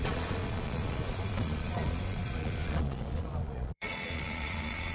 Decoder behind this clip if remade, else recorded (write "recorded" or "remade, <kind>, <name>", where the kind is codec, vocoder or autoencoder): remade, vocoder, Vocos